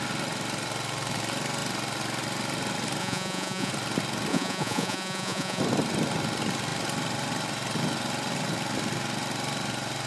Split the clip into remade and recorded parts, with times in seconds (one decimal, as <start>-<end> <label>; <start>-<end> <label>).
0.0-3.0 recorded; 3.0-3.7 remade; 3.7-4.3 recorded; 4.3-5.6 remade; 5.6-10.1 recorded

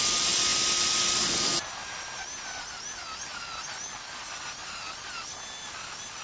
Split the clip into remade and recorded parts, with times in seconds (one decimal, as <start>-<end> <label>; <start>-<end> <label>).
0.0-6.2 recorded

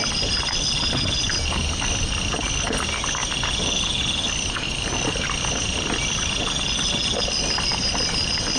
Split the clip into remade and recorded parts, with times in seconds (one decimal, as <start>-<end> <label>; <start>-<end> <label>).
0.0-8.6 recorded

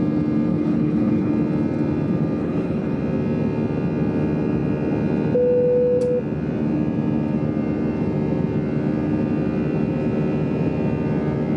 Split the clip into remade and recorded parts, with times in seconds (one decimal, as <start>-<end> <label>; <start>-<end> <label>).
0.0-0.5 recorded; 0.5-1.3 remade; 1.3-2.4 recorded; 2.4-3.0 remade; 3.0-11.6 recorded

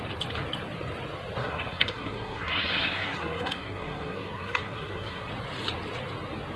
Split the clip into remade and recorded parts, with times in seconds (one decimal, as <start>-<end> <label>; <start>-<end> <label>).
0.0-1.4 recorded; 1.4-5.3 remade; 5.3-6.6 recorded

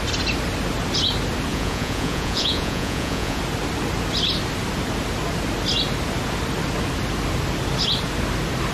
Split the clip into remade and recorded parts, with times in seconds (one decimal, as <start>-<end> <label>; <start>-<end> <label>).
0.0-1.5 recorded; 1.5-3.4 remade; 3.4-8.7 recorded

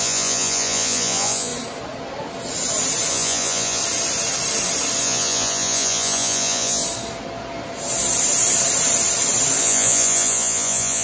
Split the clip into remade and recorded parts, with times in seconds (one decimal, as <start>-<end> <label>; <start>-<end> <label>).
0.0-1.5 remade; 1.5-3.1 recorded; 3.1-3.8 remade; 3.8-5.0 recorded; 5.0-6.8 remade; 6.8-9.6 recorded; 9.6-11.0 remade

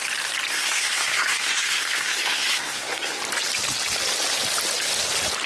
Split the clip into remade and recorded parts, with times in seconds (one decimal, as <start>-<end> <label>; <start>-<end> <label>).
0.0-0.5 recorded; 0.5-3.2 remade; 3.2-5.5 recorded